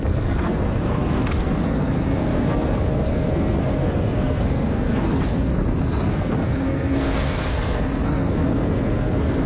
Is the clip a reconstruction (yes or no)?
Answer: yes